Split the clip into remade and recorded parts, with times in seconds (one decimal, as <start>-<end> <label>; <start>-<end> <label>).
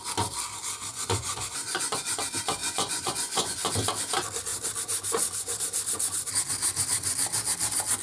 0.0-0.9 recorded; 0.9-2.2 remade; 2.2-2.6 recorded; 2.6-3.7 remade; 3.7-8.0 recorded